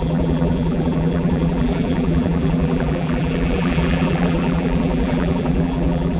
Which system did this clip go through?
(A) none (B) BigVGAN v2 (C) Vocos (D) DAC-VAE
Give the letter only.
B